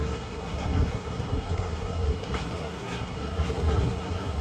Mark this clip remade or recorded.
remade